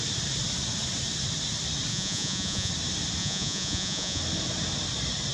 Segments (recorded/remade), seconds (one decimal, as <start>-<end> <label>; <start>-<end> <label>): 0.0-1.9 recorded; 1.9-2.7 remade; 2.7-3.2 recorded; 3.2-4.2 remade; 4.2-5.3 recorded